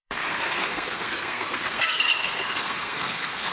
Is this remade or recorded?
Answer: remade